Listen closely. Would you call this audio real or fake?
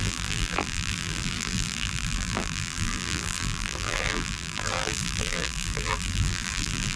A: fake